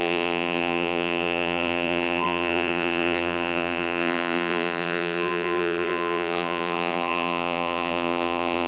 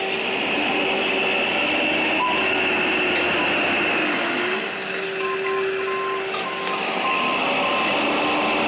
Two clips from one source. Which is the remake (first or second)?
first